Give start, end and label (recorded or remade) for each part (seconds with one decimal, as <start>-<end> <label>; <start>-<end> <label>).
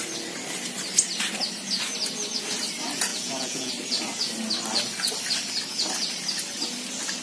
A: 0.0-3.1 recorded; 3.1-3.7 remade; 3.7-7.2 recorded